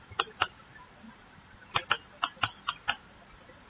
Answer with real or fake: real